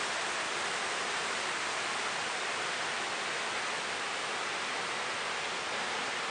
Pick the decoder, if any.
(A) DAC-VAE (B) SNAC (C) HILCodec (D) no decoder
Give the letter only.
D